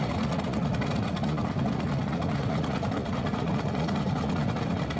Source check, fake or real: fake